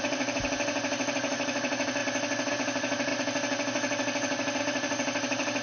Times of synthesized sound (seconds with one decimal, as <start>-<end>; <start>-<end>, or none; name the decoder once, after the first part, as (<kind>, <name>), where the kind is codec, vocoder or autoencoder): 0.0-2.0 (vocoder, BigVGAN v2); 2.5-3.1; 4.6-5.6